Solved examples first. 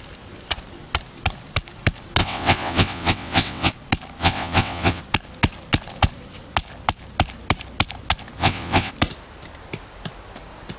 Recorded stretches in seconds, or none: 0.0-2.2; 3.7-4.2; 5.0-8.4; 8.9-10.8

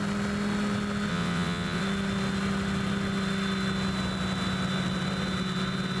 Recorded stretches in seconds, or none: 0.0-1.1; 1.8-6.0

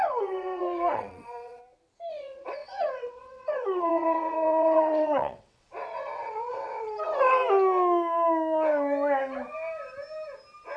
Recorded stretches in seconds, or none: 1.6-2.1; 7.4-10.8

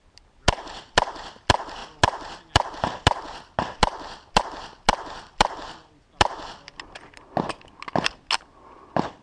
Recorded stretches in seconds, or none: 0.0-9.2

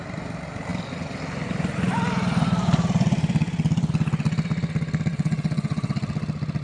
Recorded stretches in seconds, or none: 0.0-5.1; 5.9-6.6

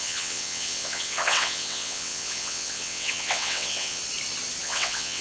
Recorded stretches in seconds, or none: 4.0-4.6

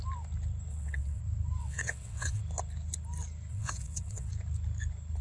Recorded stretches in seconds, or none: 0.0-0.7; 1.2-1.6; 2.4-3.5; 4.3-5.2

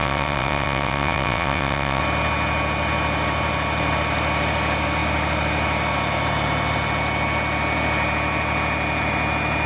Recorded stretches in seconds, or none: 2.0-9.7